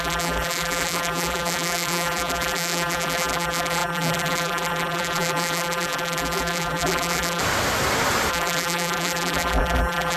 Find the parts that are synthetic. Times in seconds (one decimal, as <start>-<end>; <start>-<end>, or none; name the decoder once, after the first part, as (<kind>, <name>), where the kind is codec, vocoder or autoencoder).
0.0-7.4 (vocoder, BigVGAN v2); 8.3-10.2

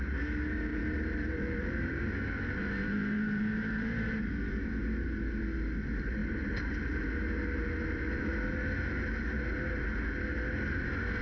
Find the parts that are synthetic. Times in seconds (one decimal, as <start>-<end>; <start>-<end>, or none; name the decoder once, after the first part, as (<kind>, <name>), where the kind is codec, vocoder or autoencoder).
0.7-4.2 (vocoder, BigVGAN v2)

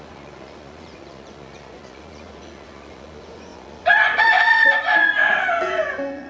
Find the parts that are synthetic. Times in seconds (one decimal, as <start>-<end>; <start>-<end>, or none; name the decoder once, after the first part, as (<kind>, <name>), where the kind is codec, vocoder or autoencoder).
0.0-6.3 (vocoder, Vocos)